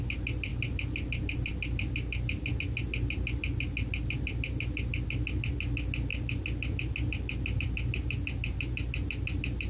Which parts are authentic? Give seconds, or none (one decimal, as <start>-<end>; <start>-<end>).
0.0-9.7